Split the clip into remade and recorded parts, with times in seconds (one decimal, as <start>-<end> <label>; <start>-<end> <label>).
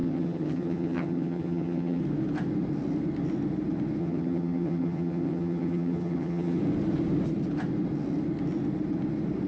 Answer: 0.0-2.0 remade; 2.0-4.0 recorded; 4.0-6.6 remade; 6.6-9.5 recorded